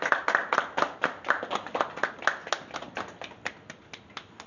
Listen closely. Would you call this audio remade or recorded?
recorded